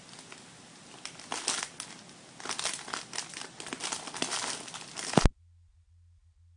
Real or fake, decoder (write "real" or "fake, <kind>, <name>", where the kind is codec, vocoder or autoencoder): real